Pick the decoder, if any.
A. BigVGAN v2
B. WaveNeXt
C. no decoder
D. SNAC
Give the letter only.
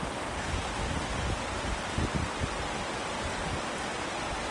C